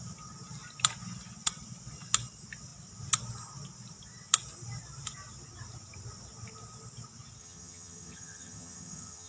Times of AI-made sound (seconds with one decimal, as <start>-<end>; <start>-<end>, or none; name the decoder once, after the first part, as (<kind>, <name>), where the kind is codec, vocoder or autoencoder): 7.4-9.3 (vocoder, HiFi-GAN)